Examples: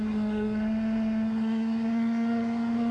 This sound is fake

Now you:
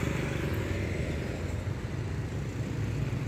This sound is real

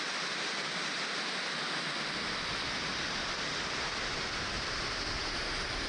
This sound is real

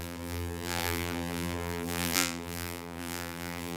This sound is fake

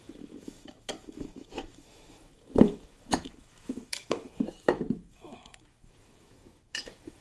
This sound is fake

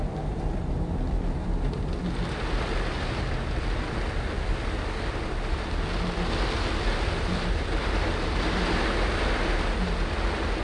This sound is real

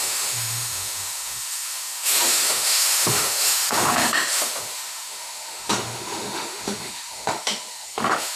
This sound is fake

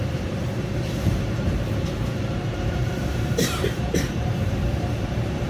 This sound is fake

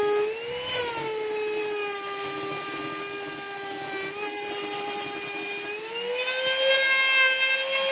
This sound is real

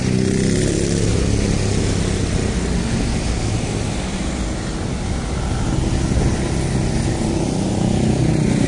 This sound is real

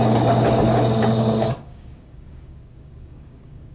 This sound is fake